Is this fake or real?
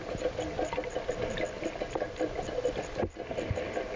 real